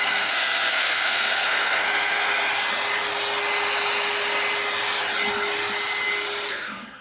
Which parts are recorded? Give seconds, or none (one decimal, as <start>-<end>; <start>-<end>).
2.3-6.5